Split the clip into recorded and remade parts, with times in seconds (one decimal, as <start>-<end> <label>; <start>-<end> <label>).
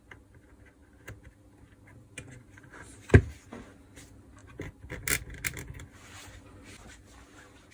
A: 0.0-7.7 recorded